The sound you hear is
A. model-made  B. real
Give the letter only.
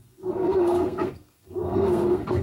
A